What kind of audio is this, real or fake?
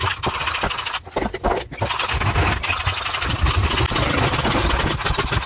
real